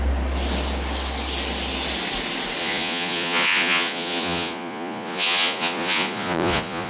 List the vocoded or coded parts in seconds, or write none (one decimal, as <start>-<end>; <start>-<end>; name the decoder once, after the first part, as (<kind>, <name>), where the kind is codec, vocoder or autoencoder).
2.6-6.9 (vocoder, Vocos)